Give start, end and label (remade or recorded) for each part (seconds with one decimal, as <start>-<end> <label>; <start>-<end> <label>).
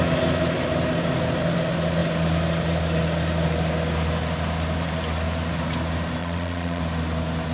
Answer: 0.0-6.2 recorded; 6.2-6.8 remade; 6.8-7.5 recorded